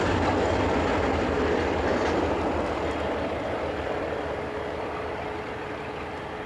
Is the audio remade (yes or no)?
no